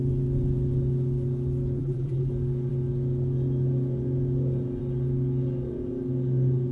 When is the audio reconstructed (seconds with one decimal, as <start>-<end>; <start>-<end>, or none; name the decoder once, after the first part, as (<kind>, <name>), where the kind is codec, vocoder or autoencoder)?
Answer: 1.8-2.3 (vocoder, BigVGAN v2)